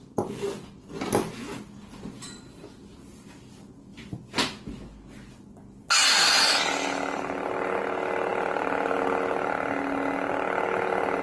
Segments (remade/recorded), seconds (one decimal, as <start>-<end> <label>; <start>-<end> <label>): 0.0-11.2 recorded